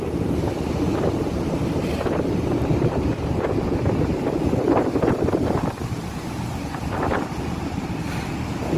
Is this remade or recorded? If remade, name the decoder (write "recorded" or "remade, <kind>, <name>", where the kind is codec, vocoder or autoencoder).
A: remade, vocoder, BigVGAN v2